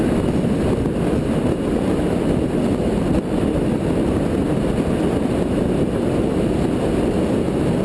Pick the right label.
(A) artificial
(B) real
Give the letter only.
B